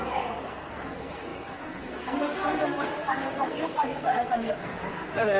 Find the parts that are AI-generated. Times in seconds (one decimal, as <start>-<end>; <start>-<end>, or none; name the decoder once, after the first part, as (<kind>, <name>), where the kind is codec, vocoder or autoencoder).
0.0-5.4 (codec, SNAC)